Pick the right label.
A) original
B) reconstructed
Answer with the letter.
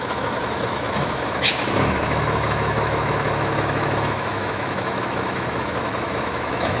B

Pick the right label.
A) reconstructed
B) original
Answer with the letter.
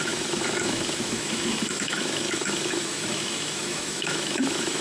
A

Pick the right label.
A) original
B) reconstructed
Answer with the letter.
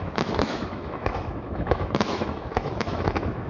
B